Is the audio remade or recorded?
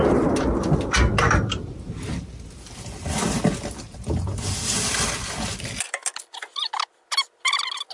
recorded